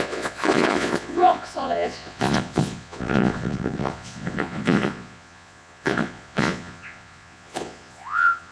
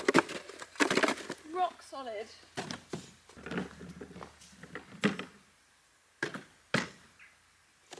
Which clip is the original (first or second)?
second